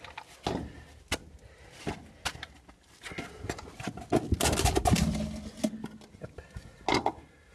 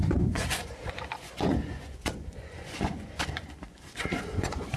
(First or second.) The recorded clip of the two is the first